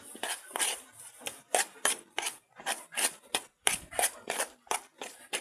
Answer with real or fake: fake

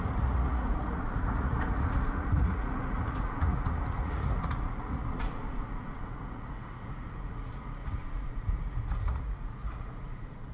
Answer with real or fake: fake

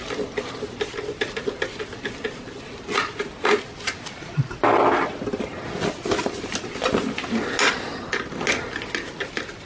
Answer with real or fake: real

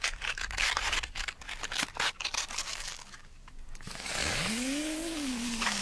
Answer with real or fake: fake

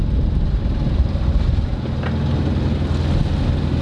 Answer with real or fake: real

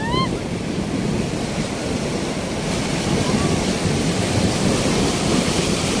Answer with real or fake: real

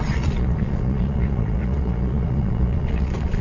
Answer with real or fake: fake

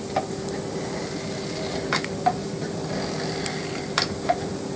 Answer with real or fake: real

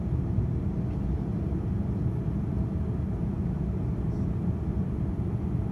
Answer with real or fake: real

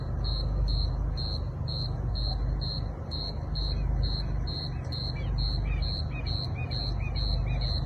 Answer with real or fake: real